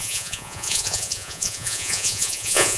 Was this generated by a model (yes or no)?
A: yes